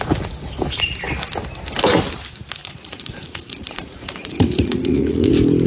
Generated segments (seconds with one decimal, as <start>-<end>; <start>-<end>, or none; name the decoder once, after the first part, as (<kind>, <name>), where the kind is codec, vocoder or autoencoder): 2.6-5.3 (vocoder, Vocos)